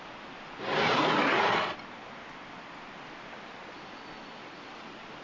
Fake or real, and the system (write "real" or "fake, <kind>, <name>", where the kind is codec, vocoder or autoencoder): real